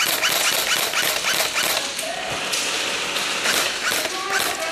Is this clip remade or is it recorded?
recorded